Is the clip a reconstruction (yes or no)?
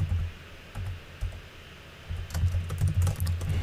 no